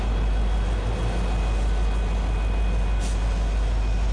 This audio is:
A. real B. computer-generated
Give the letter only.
A